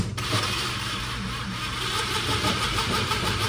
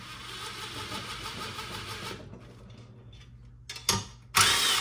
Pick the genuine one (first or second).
second